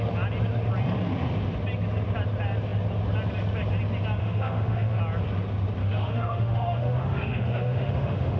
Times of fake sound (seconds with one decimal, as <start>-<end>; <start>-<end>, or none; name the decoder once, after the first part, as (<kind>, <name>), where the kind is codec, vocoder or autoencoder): 4.2-5.0 (autoencoder, DAC-VAE); 5.8-8.4